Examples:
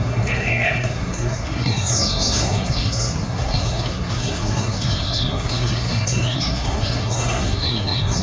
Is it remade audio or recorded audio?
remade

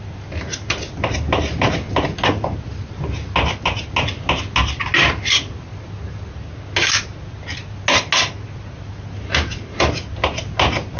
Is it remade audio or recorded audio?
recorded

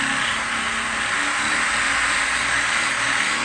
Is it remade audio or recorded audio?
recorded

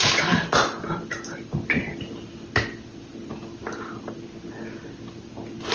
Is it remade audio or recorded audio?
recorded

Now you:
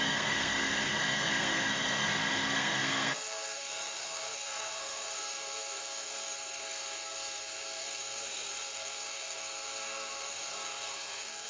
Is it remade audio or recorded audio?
remade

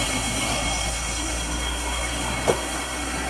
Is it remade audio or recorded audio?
remade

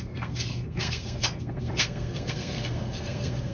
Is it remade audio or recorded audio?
remade